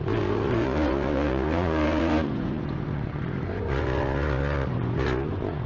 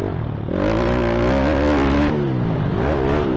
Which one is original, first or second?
second